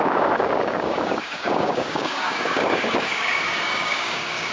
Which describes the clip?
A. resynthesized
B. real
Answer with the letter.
A